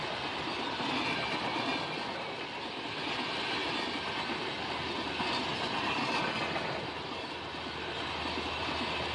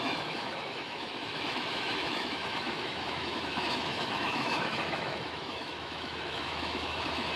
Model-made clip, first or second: second